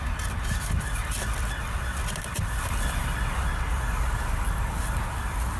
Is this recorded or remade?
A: recorded